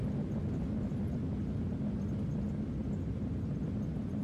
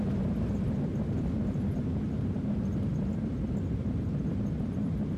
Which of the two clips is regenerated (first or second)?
second